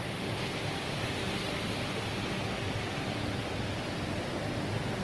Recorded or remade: recorded